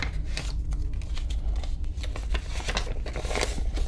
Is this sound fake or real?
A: real